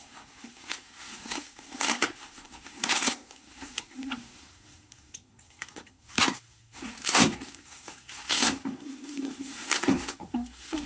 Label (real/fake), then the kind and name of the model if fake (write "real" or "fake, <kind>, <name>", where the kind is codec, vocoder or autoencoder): fake, codec, SNAC